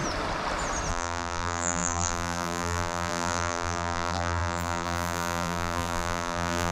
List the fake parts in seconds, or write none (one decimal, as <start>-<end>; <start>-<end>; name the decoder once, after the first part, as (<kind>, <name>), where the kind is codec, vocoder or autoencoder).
0.9-6.7 (vocoder, BigVGAN v2)